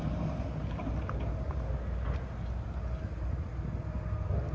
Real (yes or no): yes